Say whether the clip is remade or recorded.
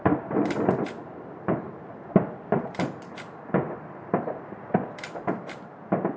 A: recorded